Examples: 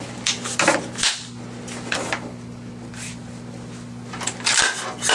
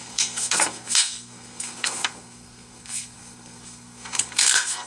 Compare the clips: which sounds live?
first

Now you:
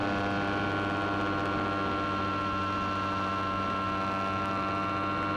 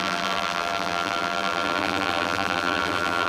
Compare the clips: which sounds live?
first